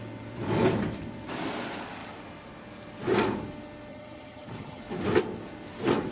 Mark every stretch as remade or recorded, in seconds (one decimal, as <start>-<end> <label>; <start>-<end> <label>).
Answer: 0.0-3.9 recorded; 3.9-4.8 remade; 4.8-6.1 recorded